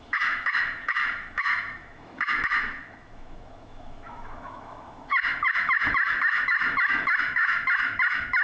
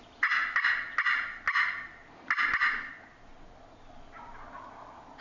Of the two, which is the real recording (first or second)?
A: second